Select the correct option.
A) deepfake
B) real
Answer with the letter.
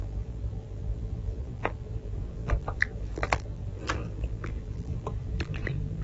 A